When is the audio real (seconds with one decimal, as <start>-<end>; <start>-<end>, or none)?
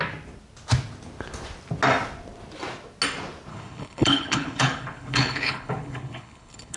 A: 0.0-3.5